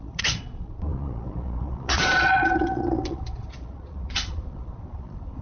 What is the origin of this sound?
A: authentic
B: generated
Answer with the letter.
B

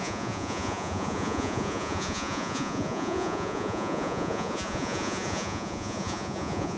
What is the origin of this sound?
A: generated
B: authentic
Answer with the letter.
A